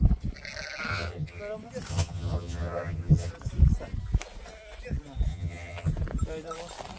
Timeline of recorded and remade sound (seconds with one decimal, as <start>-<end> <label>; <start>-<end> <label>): 0.0-0.9 recorded; 0.9-1.4 remade; 1.4-1.9 recorded; 1.9-3.3 remade; 3.3-5.3 recorded; 5.3-5.9 remade; 5.9-7.0 recorded